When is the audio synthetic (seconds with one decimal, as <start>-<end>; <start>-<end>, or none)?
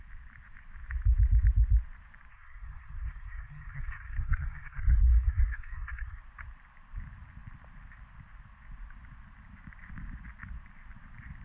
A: 2.3-6.2